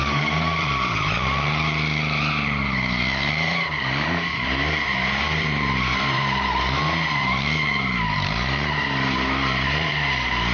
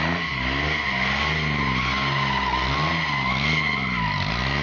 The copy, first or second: first